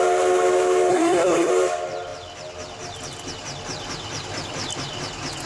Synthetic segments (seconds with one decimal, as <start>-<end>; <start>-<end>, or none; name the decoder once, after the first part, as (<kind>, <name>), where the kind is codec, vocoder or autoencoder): 0.9-1.5 (codec, SNAC)